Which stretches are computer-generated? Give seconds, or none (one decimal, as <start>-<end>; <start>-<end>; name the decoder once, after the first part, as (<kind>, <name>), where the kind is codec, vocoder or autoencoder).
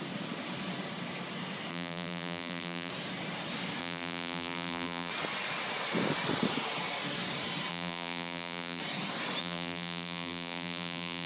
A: 1.7-2.9 (vocoder, BigVGAN v2); 3.8-5.1; 7.7-8.8; 9.4-11.3